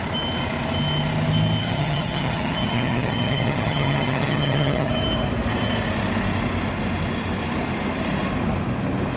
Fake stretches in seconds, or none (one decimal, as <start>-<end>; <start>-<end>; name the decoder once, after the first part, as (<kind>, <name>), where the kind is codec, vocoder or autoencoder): 1.6-4.9 (vocoder, HiFi-GAN)